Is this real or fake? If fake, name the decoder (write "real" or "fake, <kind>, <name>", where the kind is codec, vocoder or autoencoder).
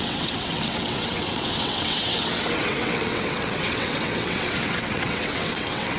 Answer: fake, vocoder, WaveNeXt